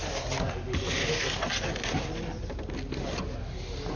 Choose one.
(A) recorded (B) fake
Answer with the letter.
A